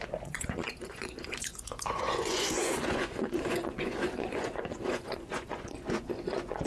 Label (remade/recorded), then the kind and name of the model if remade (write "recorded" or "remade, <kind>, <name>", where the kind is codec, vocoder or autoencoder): remade, vocoder, Vocos